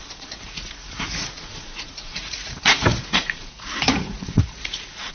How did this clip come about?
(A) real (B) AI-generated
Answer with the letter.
B